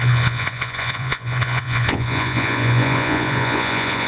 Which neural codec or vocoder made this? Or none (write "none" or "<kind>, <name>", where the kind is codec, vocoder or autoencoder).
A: vocoder, Vocos